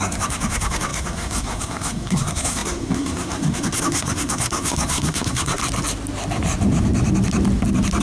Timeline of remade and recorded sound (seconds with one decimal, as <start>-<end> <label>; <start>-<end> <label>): 0.0-5.6 remade; 5.6-8.0 recorded